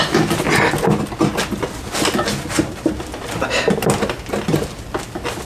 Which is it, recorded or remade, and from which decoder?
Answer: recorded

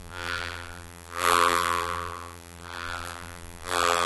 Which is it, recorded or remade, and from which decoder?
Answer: remade, vocoder, BigVGAN v2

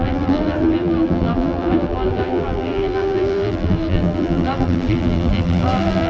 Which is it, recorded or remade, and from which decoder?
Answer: remade, vocoder, BigVGAN v2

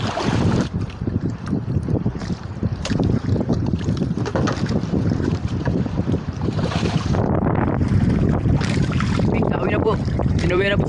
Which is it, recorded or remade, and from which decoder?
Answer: remade, vocoder, BigVGAN v2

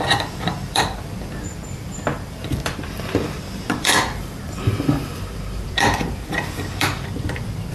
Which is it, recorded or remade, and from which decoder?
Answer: remade, vocoder, BigVGAN v2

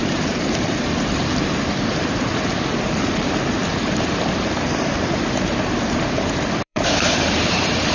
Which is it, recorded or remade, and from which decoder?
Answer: remade, vocoder, BigVGAN v2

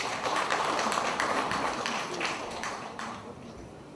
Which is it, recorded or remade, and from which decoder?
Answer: remade, vocoder, BigVGAN v2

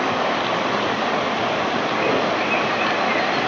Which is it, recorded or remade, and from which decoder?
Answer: recorded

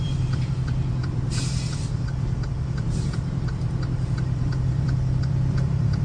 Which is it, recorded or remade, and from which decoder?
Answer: remade, vocoder, BigVGAN v2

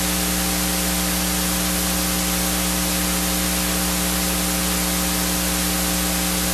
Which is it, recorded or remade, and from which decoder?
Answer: recorded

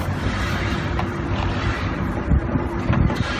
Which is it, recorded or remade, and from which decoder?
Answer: remade, vocoder, BigVGAN v2